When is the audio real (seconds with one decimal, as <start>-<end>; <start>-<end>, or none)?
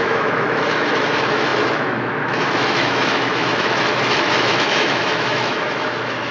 none